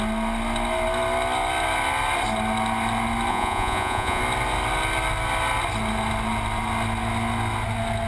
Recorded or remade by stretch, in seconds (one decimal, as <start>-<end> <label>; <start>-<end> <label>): 0.0-3.3 recorded; 3.3-4.2 remade; 4.2-8.1 recorded